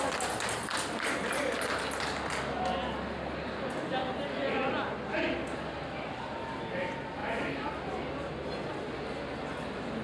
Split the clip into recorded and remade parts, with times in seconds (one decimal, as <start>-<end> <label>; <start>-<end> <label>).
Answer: 0.0-7.2 recorded; 7.2-7.9 remade; 7.9-10.0 recorded